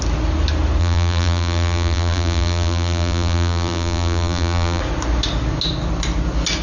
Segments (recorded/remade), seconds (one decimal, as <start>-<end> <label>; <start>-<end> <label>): 0.0-0.8 recorded; 0.8-4.8 remade; 4.8-6.6 recorded